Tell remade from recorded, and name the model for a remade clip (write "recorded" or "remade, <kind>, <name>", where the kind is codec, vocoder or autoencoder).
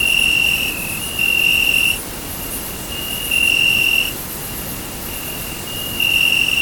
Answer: recorded